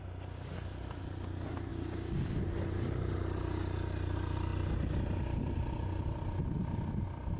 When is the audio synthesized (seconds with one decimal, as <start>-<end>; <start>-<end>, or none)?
1.7-2.4

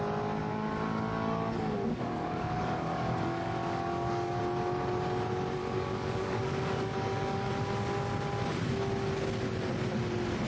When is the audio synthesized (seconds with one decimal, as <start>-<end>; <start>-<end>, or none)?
0.4-4.4; 5.6-7.5

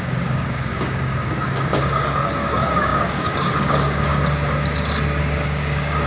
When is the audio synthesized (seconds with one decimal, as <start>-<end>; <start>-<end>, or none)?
0.0-4.1; 5.2-6.1